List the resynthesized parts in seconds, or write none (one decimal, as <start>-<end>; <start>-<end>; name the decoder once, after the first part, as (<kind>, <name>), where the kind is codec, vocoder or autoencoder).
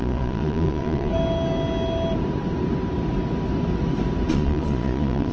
0.0-1.1 (vocoder, Vocos); 4.3-5.3